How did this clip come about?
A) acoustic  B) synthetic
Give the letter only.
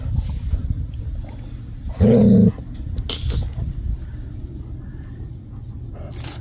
A